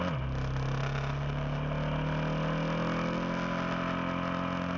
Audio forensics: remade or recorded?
recorded